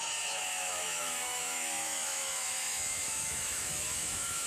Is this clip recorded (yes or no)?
no